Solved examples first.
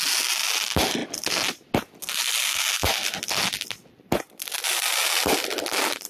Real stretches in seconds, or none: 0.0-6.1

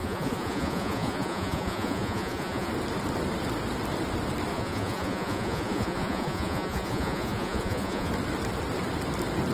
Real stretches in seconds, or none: 2.7-4.5; 8.1-9.5

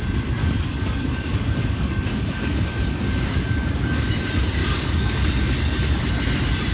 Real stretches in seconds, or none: 0.0-0.4; 4.1-4.6; 5.3-6.7

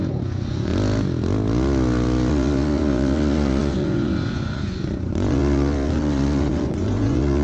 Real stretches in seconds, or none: 0.7-2.3